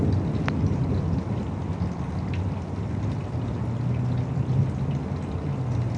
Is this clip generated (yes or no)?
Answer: no